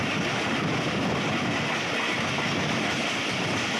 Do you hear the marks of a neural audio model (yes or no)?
no